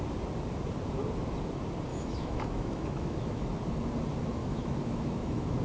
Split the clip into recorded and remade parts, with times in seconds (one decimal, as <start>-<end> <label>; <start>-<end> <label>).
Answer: 0.0-1.9 recorded; 1.9-3.6 remade; 3.6-4.4 recorded; 4.4-5.6 remade